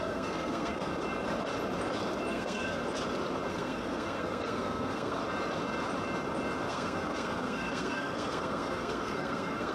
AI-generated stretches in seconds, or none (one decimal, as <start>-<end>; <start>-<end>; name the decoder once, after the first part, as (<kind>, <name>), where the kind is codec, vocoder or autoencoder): 0.0-0.9 (codec, SNAC); 2.3-2.8; 3.5-5.2; 6.7-9.7